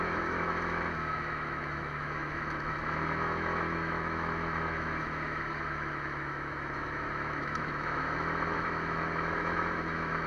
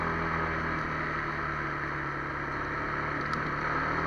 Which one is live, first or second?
second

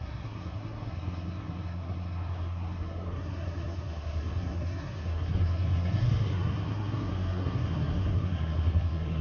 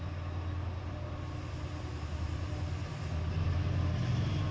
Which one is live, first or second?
second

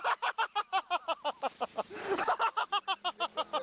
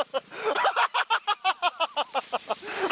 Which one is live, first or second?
first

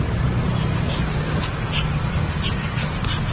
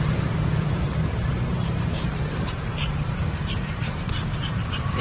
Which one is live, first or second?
first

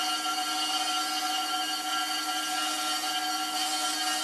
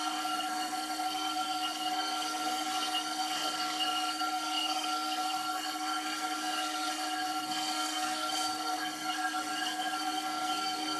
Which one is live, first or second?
first